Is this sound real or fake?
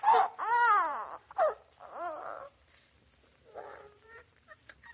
fake